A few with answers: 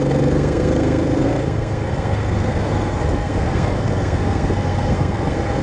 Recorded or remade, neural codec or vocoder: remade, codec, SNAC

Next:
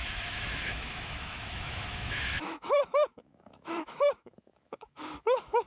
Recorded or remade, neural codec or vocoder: remade, autoencoder, DAC-VAE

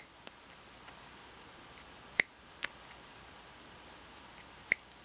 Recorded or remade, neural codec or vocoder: recorded